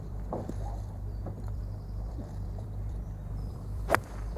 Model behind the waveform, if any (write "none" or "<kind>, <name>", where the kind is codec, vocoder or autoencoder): vocoder, BigVGAN v2